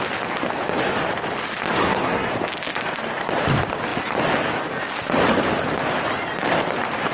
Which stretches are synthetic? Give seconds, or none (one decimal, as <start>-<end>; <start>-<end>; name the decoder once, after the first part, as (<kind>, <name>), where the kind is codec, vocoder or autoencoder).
1.8-2.3 (codec, SNAC)